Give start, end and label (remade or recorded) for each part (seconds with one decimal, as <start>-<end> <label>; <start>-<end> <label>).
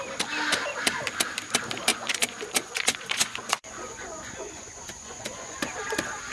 0.0-1.9 recorded; 1.9-5.7 remade; 5.7-6.3 recorded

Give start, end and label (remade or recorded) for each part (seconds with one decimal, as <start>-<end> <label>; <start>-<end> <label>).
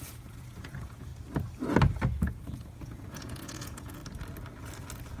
0.0-1.1 remade; 1.1-2.2 recorded; 2.2-4.0 remade; 4.0-5.2 recorded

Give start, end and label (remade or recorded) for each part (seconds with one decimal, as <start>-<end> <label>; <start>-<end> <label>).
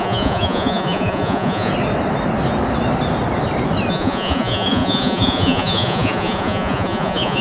0.0-1.7 remade; 1.7-3.9 recorded; 3.9-7.4 remade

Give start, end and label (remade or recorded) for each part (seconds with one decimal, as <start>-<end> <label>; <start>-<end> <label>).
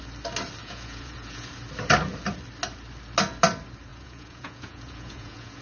0.0-0.6 recorded; 0.6-1.5 remade; 1.5-3.9 recorded; 3.9-5.6 remade